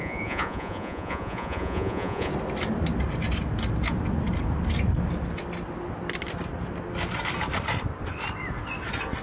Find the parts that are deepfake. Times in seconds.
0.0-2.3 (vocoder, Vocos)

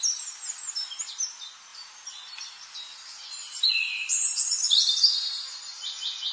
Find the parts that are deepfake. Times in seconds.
1.7-5.5 (vocoder, BigVGAN v2)

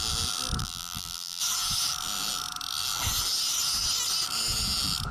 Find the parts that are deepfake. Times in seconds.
0.6-1.4 (vocoder, BigVGAN v2)

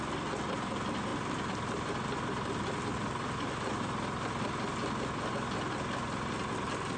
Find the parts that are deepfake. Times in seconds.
none